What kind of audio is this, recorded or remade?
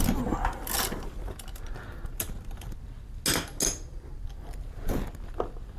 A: recorded